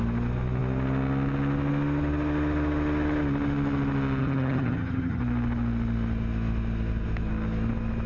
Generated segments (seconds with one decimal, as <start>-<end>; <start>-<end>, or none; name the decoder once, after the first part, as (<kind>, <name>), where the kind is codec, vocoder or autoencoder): 4.2-5.2 (vocoder, HiFi-GAN)

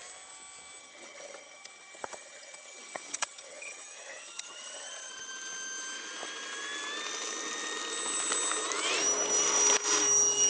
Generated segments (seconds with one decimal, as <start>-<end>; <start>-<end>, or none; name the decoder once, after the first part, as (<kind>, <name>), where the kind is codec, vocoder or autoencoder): 0.8-5.1 (vocoder, HiFi-GAN)

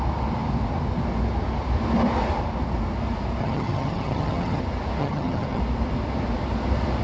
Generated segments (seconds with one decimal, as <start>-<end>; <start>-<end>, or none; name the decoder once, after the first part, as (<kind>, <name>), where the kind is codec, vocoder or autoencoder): 3.4-4.6 (vocoder, HiFi-GAN); 5.0-5.6

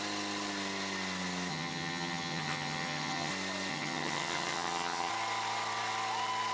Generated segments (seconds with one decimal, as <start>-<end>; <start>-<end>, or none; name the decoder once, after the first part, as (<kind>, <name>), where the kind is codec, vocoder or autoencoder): 1.5-3.3 (vocoder, HiFi-GAN); 3.7-5.1

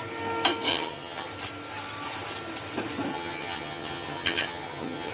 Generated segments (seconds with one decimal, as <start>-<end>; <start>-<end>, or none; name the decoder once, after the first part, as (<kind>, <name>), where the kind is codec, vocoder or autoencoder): 0.7-1.3 (vocoder, HiFi-GAN); 3.1-5.1

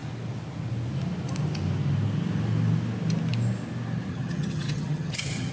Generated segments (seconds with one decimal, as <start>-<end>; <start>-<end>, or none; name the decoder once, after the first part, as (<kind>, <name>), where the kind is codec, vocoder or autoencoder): 4.1-5.5 (vocoder, HiFi-GAN)

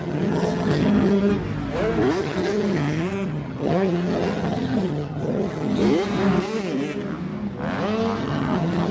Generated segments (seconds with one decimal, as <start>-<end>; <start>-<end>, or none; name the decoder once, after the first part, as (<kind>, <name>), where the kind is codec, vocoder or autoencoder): 0.0-1.3 (vocoder, HiFi-GAN); 2.2-5.8; 8.2-8.9